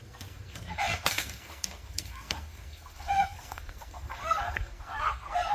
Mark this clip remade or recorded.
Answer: remade